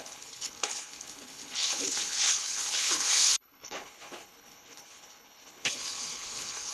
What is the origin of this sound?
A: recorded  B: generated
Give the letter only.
B